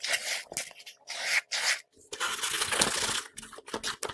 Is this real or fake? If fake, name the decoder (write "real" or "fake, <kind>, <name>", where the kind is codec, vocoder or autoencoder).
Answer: real